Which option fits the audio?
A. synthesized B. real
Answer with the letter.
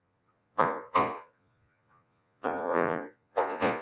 A